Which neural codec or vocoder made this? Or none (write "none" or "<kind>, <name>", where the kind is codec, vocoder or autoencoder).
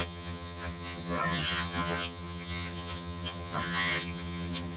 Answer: vocoder, HiFi-GAN